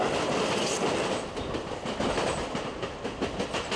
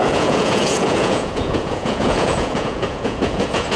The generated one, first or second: second